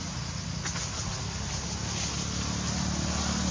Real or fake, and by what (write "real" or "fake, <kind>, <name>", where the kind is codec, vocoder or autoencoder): real